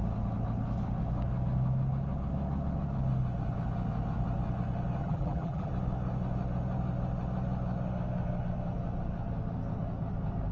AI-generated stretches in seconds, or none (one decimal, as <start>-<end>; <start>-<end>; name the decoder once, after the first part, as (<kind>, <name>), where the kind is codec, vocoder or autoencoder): 5.0-5.7 (vocoder, BigVGAN v2)